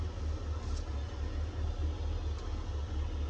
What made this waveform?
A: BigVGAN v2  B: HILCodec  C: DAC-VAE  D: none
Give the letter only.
D